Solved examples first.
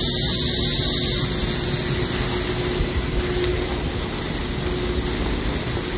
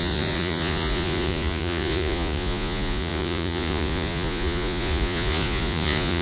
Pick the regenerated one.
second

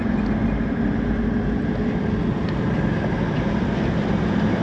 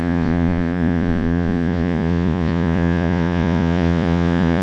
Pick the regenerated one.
second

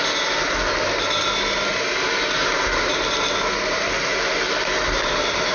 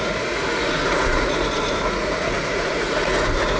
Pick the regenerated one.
second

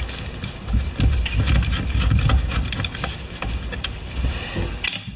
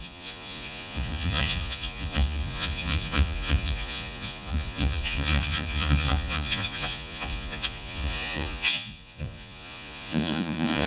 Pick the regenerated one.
second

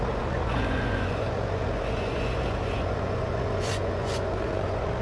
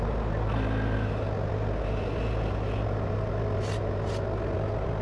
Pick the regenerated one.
first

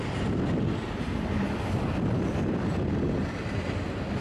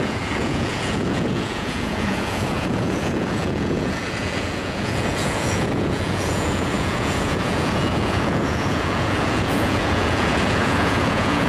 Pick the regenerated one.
second